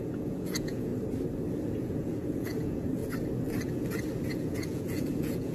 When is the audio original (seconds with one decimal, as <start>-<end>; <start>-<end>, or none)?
0.9-1.5; 3.0-4.3